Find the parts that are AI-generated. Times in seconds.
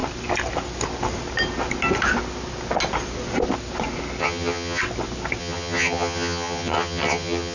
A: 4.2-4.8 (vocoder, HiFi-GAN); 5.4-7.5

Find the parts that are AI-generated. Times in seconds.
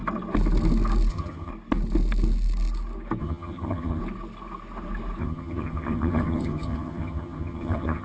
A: 1.1-1.5 (vocoder, HiFi-GAN); 3.2-4.0; 5.2-8.0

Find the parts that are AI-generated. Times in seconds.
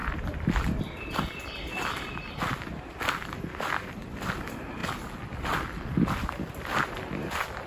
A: 0.0-4.8 (vocoder, BigVGAN v2); 5.4-7.7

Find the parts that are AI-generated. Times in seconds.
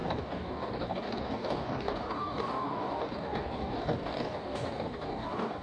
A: 0.0-5.6 (codec, DAC)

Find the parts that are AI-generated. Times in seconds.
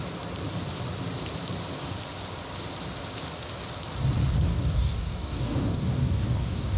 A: 4.5-6.8 (codec, DAC)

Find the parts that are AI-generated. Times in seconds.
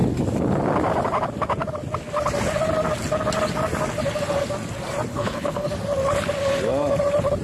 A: 5.1-5.7 (codec, HILCodec)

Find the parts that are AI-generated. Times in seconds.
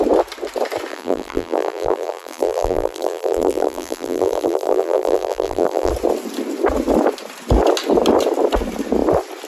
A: 0.9-5.9 (vocoder, BigVGAN v2)